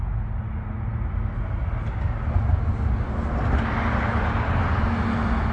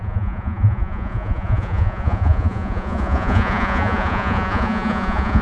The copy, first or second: second